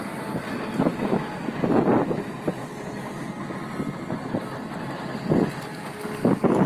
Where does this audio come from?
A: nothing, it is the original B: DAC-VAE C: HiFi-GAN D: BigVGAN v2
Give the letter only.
A